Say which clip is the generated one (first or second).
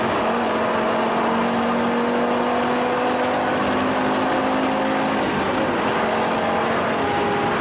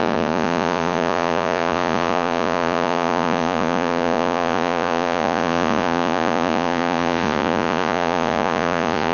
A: second